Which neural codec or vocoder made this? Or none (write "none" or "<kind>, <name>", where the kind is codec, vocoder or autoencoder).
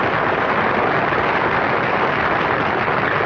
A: none